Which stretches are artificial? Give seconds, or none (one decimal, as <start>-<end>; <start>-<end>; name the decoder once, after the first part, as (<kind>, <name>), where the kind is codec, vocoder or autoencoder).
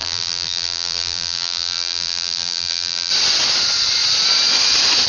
0.0-3.1 (vocoder, BigVGAN v2)